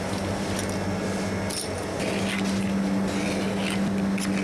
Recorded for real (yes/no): yes